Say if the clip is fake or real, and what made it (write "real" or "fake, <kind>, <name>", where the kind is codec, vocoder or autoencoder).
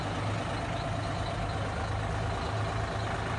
real